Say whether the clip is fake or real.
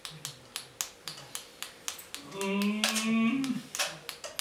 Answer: real